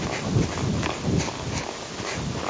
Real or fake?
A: real